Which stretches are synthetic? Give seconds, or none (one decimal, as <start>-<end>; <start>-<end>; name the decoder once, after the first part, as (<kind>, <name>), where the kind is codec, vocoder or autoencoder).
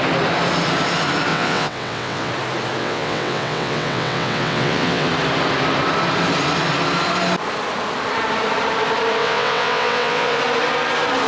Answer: 1.3-2.3 (vocoder, WaveNeXt); 2.8-5.1; 9.2-10.4